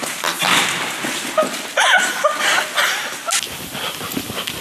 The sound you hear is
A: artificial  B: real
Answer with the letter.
B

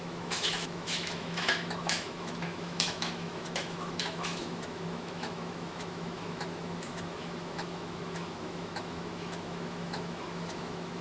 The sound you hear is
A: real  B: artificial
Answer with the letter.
B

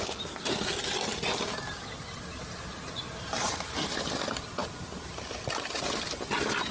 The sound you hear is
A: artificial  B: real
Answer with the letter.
B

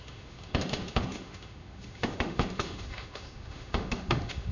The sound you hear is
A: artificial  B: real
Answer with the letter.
A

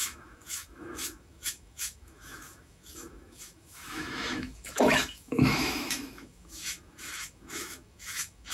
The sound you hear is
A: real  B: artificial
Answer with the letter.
B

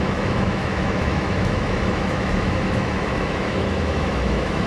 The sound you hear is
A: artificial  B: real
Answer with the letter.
A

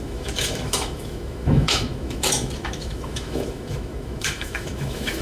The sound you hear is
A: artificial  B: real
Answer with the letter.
A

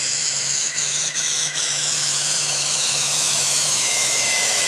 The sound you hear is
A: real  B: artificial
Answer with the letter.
B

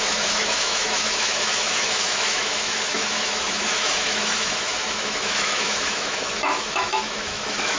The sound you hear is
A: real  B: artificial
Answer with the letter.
B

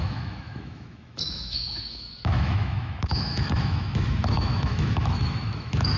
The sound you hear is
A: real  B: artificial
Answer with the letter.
B